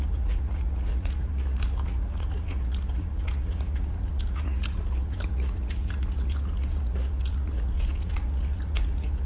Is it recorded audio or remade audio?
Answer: remade